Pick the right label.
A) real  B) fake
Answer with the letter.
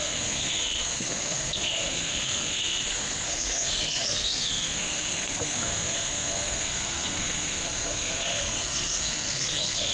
B